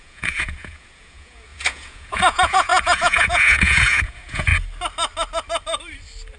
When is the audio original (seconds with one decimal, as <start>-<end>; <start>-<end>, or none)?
4.5-6.4